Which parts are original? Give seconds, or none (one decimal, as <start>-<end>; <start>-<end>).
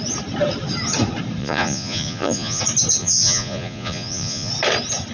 0.0-1.4; 2.6-3.0; 4.5-5.1